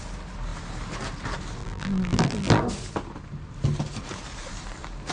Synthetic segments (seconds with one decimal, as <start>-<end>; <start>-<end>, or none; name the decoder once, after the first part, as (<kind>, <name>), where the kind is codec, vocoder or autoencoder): 1.6-2.6 (vocoder, BigVGAN v2)